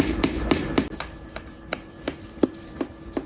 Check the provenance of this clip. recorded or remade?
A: remade